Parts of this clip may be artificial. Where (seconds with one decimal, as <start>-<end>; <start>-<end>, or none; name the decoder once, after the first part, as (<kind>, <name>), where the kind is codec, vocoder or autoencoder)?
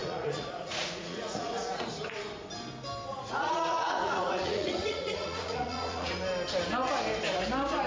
0.0-1.9 (vocoder, Vocos); 3.1-6.1